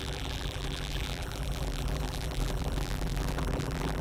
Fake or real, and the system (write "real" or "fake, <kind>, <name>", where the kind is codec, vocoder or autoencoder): fake, vocoder, BigVGAN v2